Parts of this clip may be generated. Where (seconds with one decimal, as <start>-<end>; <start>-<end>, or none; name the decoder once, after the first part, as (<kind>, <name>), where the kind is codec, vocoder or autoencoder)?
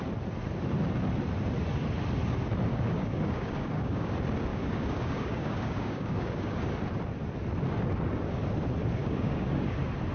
2.7-4.1 (codec, DAC); 4.5-6.6; 9.0-9.7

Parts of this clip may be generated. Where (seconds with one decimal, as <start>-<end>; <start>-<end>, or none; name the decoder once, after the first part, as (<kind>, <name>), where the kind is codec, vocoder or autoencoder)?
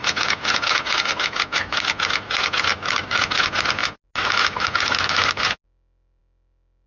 2.7-3.2 (codec, DAC)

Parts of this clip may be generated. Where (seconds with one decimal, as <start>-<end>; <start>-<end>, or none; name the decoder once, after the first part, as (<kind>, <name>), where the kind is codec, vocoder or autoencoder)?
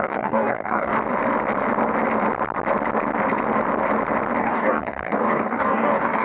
0.0-0.9 (codec, DAC); 4.4-6.2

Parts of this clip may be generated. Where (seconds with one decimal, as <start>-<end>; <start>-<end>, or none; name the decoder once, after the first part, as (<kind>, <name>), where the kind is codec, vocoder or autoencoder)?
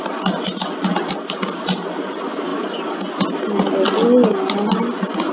none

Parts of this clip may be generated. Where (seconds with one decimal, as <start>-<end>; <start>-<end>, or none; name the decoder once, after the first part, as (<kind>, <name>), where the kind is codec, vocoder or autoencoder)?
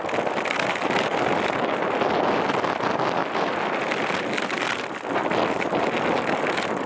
none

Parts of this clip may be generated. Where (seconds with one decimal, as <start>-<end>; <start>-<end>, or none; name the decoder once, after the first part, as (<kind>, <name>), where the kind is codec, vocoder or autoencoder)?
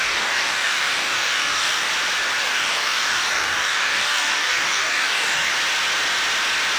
0.0-1.9 (codec, DAC); 2.4-5.5